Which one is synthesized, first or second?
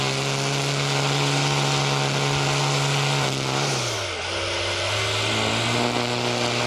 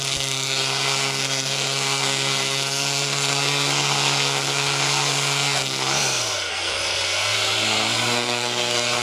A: second